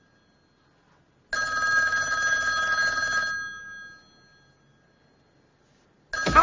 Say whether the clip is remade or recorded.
recorded